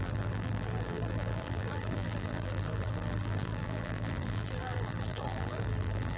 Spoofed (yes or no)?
yes